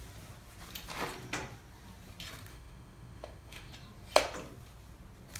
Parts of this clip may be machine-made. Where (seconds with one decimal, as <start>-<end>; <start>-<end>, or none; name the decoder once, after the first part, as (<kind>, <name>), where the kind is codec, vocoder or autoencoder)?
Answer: 2.5-3.7 (autoencoder, DAC-VAE)